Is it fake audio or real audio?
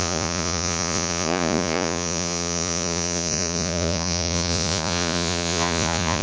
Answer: fake